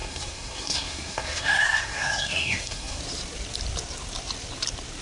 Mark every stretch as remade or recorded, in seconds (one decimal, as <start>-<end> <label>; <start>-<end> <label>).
0.0-3.0 remade; 3.0-5.0 recorded